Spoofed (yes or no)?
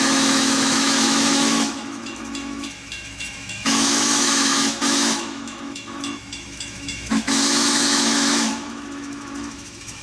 yes